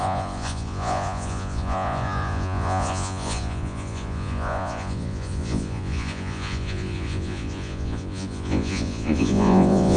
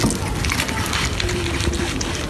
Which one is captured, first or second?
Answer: second